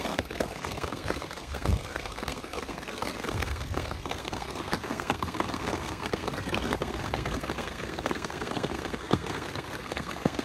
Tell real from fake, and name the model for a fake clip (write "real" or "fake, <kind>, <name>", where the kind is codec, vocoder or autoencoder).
fake, codec, SNAC